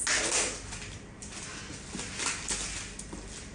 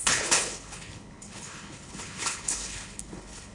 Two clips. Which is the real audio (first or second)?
first